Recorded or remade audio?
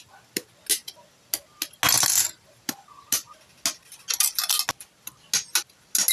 recorded